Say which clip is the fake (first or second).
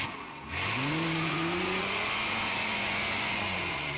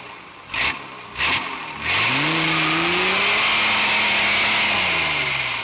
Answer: first